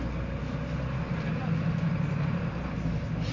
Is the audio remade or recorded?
recorded